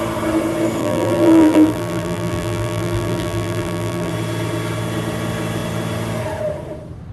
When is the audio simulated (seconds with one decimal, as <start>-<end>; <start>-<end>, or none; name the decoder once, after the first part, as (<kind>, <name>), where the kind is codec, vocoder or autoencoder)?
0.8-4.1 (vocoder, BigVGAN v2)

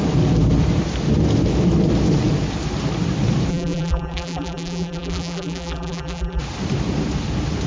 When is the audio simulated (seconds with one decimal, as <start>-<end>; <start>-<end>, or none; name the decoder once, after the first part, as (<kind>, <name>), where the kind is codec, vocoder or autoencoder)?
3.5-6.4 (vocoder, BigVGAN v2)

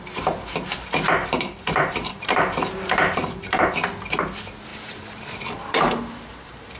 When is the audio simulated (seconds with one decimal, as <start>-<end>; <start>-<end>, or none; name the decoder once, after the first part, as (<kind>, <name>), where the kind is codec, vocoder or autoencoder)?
1.2-3.7 (vocoder, BigVGAN v2); 4.7-6.8

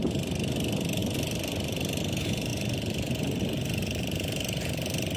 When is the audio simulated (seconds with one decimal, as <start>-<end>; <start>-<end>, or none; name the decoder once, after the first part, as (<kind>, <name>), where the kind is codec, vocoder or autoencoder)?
1.0-2.0 (vocoder, BigVGAN v2); 2.5-3.4; 3.8-5.2

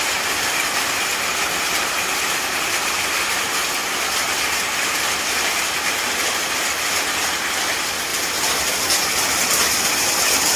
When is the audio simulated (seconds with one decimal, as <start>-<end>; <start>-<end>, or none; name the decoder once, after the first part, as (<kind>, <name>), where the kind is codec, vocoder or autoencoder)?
8.1-10.6 (vocoder, BigVGAN v2)

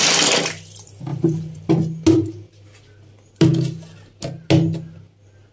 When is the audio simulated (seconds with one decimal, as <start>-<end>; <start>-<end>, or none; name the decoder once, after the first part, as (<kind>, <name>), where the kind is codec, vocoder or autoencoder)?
1.1-1.7 (vocoder, BigVGAN v2)

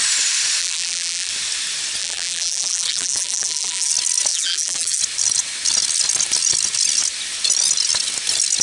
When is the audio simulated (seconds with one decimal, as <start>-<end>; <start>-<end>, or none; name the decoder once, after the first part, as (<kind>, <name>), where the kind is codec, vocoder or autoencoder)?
0.6-1.3 (vocoder, BigVGAN v2); 2.0-3.9; 4.3-5.0

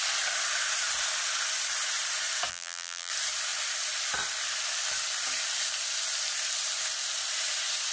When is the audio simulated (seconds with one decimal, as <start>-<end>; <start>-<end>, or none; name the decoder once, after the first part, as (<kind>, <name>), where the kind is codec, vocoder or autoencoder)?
2.5-3.1 (vocoder, BigVGAN v2)